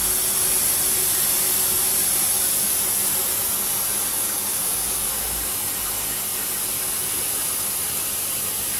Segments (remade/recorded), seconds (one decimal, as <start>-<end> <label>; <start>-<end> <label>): 0.0-4.1 recorded; 4.1-5.1 remade; 5.1-8.8 recorded